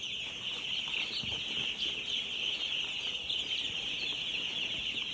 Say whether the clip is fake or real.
real